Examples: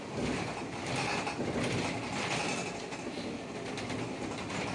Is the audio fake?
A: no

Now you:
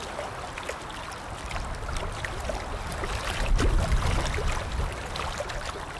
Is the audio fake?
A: no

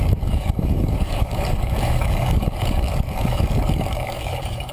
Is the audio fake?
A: yes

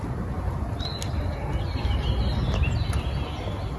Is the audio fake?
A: no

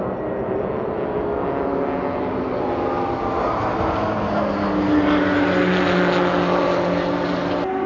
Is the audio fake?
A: no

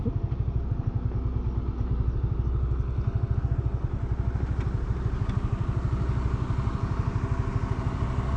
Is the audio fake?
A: no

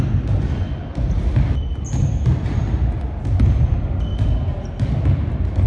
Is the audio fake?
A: no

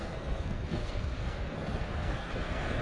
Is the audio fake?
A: yes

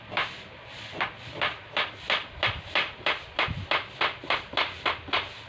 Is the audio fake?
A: no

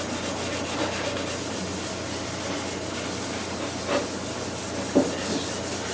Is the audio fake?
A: no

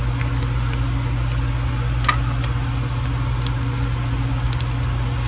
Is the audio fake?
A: no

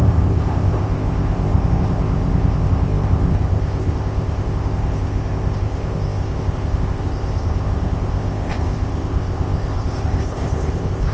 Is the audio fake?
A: yes